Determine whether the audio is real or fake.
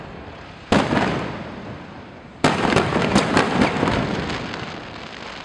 real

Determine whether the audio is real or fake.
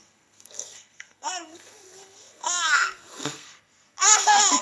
fake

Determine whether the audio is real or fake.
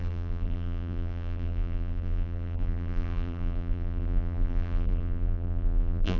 fake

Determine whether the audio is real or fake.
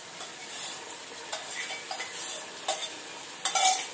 real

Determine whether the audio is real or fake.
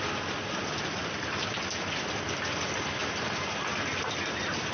real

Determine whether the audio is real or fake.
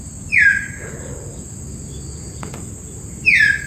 real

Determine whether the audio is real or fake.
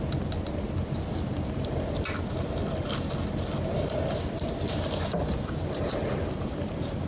real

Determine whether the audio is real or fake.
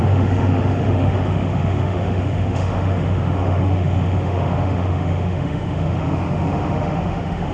fake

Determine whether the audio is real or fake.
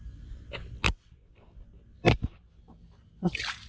real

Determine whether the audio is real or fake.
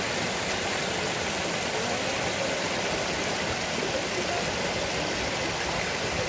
real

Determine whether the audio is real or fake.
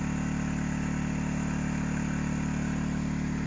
real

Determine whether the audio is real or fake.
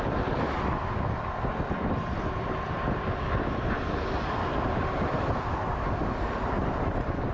real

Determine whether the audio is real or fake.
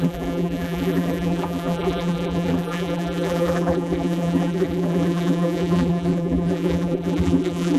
fake